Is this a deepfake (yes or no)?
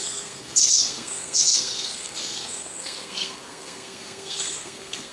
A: yes